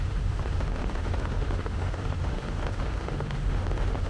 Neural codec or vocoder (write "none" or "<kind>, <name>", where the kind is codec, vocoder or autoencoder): autoencoder, DAC-VAE